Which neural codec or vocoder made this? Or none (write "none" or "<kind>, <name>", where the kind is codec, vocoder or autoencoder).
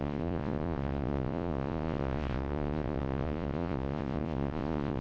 vocoder, Vocos